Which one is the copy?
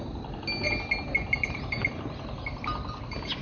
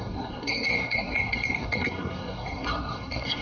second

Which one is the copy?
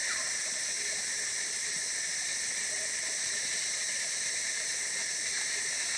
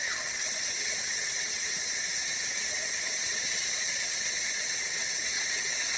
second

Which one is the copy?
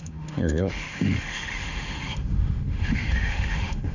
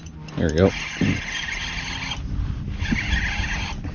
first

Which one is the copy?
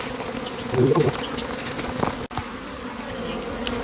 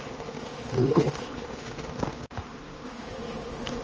second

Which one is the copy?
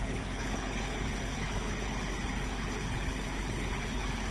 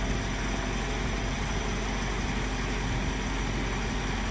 first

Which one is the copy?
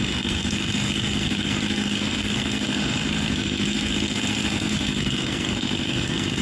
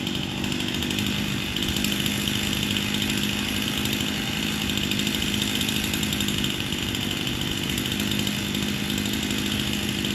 first